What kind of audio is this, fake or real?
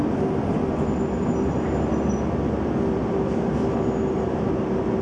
real